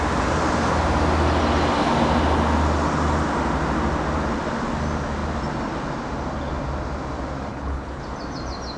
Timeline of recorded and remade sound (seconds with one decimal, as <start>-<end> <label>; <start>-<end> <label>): 0.0-7.5 recorded; 7.5-8.0 remade; 8.0-8.8 recorded